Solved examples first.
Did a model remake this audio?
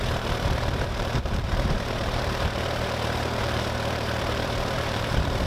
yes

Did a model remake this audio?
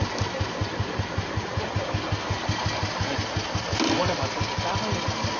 no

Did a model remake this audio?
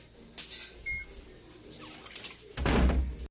no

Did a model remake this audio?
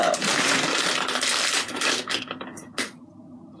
no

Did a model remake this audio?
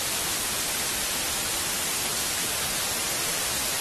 yes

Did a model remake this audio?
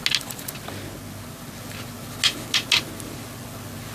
no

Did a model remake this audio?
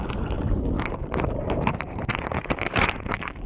yes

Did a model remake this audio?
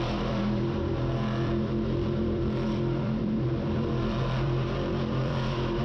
yes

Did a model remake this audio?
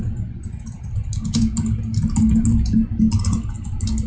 no